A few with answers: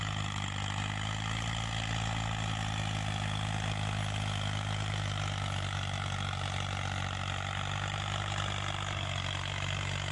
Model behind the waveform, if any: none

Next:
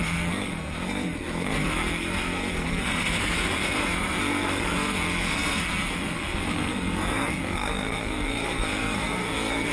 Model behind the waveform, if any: codec, SNAC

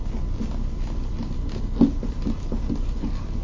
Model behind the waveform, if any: none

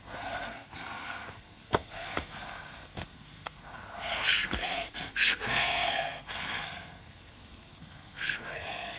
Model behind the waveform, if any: codec, SNAC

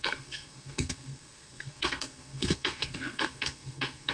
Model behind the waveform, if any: codec, SNAC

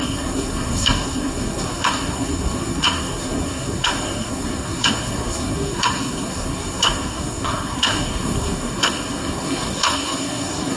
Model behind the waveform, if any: codec, SNAC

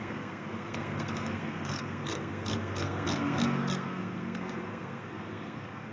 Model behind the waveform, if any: codec, SNAC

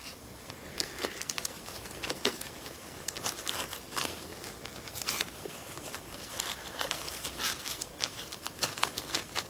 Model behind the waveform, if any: codec, SNAC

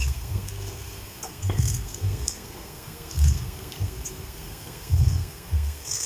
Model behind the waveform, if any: codec, SNAC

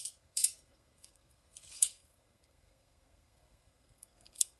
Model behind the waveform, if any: codec, SNAC